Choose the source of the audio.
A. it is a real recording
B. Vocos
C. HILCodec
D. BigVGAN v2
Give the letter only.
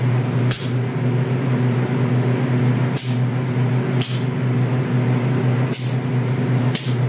A